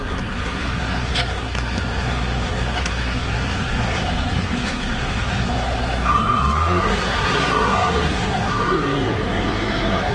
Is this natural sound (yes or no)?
no